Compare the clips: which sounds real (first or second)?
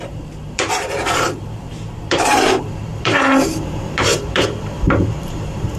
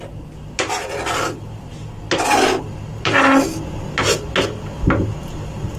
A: second